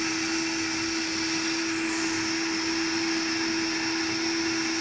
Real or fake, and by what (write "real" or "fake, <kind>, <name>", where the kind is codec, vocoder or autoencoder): real